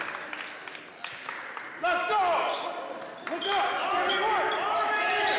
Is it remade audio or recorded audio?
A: recorded